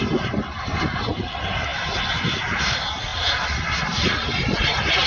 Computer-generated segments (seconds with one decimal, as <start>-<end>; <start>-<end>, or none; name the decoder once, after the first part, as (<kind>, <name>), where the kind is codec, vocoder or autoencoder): none